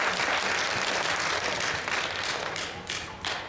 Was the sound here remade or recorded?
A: recorded